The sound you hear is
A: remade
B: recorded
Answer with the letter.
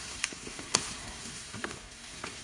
A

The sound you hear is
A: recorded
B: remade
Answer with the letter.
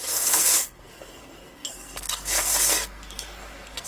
B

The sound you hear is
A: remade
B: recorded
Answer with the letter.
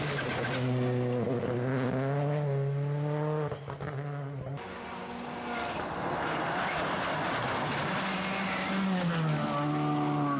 B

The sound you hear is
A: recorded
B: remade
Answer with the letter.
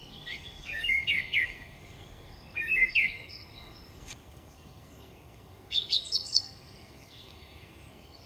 B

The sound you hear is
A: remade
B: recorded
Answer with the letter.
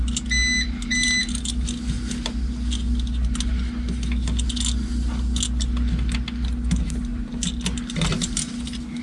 B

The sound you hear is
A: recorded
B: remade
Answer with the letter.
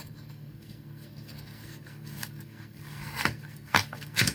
B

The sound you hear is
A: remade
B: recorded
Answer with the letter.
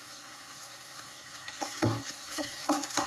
A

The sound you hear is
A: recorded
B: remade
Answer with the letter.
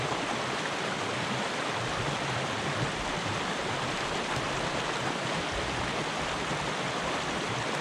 A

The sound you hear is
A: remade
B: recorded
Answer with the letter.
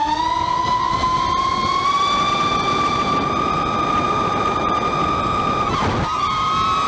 B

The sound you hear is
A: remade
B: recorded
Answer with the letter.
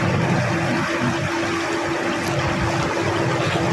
B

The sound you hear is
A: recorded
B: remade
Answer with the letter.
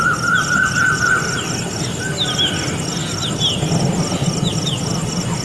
A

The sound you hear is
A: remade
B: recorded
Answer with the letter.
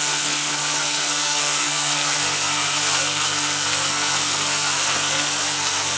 A